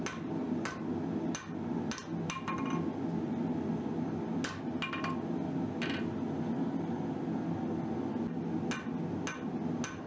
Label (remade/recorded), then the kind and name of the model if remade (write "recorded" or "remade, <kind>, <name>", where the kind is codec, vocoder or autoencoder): recorded